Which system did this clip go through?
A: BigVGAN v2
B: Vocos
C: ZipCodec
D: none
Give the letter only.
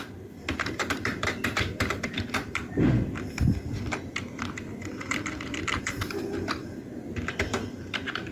A